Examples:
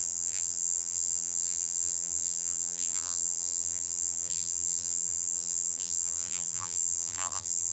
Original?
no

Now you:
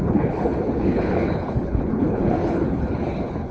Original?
no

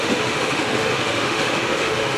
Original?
no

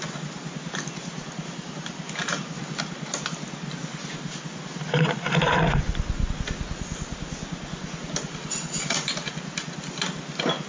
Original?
yes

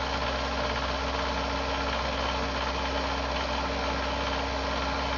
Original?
yes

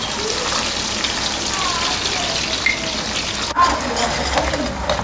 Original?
yes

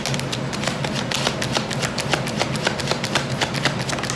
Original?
yes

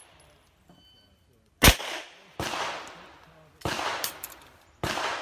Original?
yes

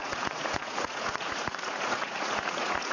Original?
no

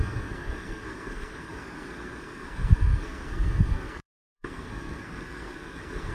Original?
no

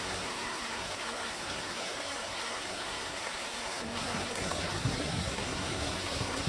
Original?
no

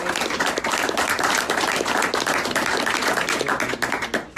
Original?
yes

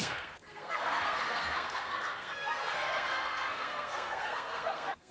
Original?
no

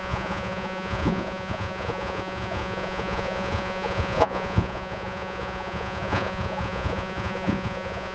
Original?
no